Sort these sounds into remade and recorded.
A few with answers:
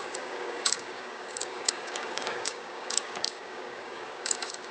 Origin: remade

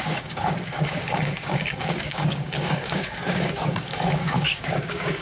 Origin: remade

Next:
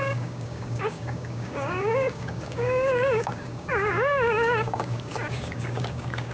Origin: remade